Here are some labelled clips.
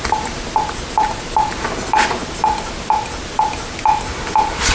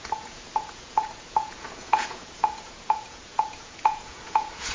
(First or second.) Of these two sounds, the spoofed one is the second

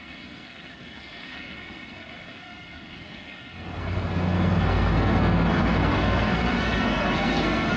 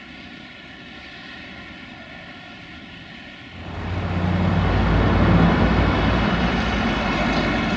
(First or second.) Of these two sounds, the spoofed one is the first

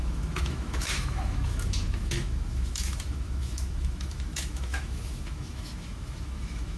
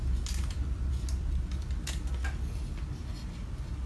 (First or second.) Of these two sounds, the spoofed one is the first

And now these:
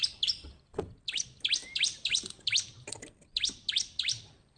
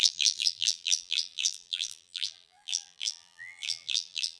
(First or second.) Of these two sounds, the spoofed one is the second